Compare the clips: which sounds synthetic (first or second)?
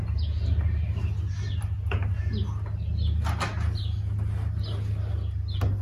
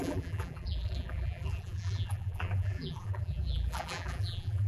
second